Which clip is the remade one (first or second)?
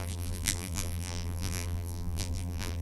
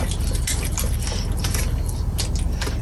first